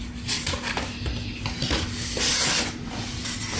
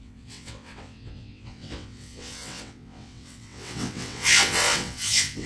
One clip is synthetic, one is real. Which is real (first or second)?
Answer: first